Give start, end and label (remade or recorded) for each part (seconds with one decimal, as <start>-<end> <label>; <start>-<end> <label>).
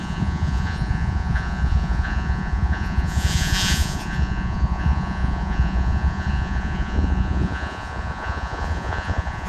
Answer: 0.0-9.5 remade